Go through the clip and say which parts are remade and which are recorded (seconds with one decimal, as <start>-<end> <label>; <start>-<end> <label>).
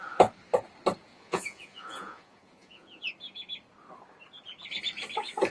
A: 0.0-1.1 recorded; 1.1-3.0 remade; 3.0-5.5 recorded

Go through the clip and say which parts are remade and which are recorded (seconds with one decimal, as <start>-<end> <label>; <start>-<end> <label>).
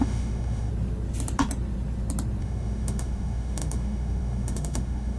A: 0.0-0.7 remade; 0.7-2.4 recorded; 2.4-5.2 remade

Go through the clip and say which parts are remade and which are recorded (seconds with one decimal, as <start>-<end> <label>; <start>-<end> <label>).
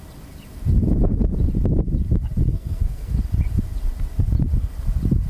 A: 0.0-2.5 recorded; 2.5-3.2 remade; 3.2-5.3 recorded